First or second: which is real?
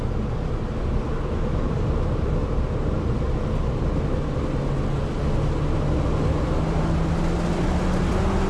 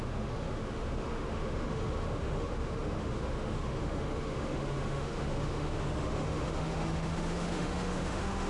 first